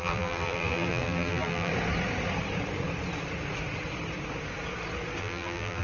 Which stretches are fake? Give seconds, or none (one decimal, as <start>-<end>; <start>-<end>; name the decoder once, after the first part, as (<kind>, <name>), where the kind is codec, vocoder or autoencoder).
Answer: 0.0-1.7 (vocoder, BigVGAN v2); 5.2-5.8